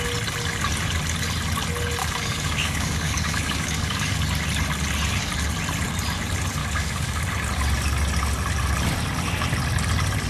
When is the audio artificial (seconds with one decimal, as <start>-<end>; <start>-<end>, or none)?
2.0-4.2; 6.6-7.2